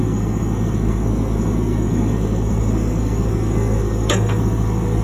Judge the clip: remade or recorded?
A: remade